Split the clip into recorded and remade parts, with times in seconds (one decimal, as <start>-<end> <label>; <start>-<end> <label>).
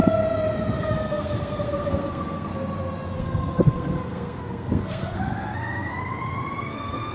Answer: 0.0-0.8 recorded; 0.8-2.5 remade; 2.5-3.2 recorded; 3.2-5.9 remade; 5.9-6.6 recorded; 6.6-7.1 remade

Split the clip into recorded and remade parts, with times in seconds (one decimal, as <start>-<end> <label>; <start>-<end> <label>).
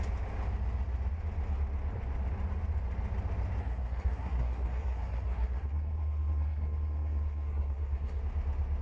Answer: 0.0-3.6 recorded; 3.6-8.2 remade; 8.2-8.8 recorded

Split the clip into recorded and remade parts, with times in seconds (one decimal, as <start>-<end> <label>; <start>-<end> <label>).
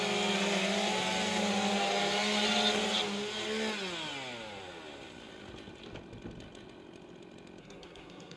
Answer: 0.0-7.6 recorded; 7.6-8.4 remade